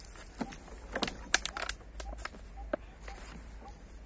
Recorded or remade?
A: recorded